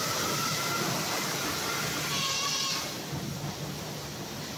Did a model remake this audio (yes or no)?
no